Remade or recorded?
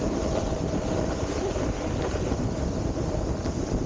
recorded